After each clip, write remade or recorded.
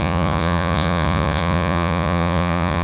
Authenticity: remade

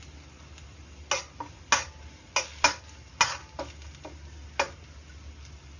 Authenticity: recorded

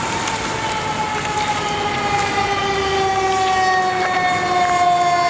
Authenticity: recorded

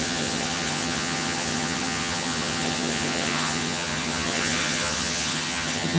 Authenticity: remade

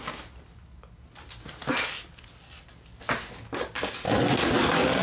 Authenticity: recorded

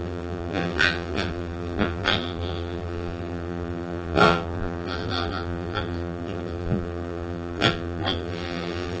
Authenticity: remade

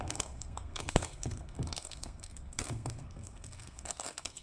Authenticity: remade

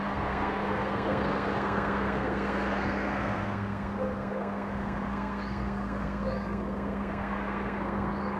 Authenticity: remade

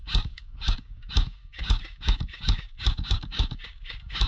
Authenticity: remade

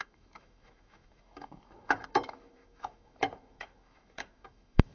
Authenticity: remade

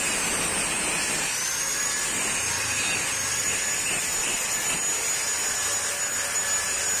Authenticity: recorded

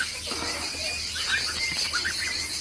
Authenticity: recorded